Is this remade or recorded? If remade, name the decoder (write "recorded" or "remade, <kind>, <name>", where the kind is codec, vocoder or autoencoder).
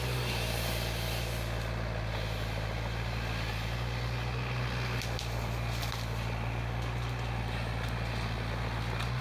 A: recorded